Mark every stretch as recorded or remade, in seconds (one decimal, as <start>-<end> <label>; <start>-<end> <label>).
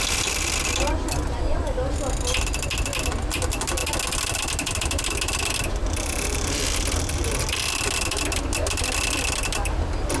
0.0-5.8 recorded; 5.8-6.6 remade; 6.6-10.2 recorded